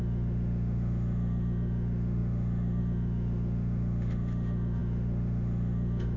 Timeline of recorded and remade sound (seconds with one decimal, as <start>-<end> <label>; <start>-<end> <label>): 0.0-6.2 remade